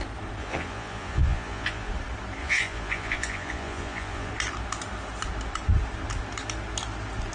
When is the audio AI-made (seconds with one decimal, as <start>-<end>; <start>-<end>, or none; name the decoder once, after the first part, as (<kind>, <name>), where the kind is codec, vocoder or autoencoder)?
0.4-1.9 (vocoder, Vocos); 2.4-4.3